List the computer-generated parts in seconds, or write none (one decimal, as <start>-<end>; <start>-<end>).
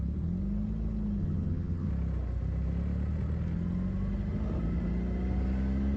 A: 1.2-1.9